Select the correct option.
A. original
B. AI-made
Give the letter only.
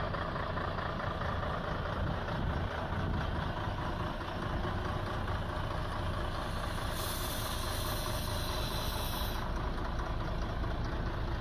A